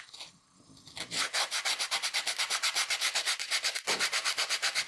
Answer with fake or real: real